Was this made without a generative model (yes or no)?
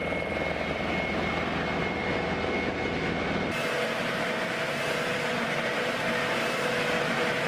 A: yes